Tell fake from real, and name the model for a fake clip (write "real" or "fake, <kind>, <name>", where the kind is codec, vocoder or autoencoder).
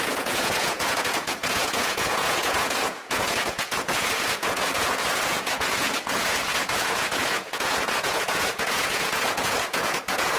fake, vocoder, Vocos